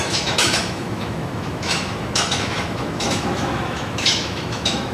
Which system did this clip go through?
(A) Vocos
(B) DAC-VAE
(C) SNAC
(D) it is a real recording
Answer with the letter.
B